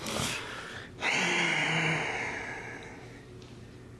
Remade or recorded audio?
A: recorded